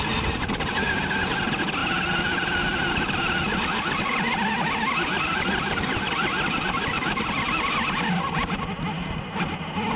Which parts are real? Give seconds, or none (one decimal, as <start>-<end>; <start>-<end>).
0.0-10.0